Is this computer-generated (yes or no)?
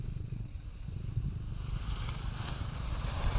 no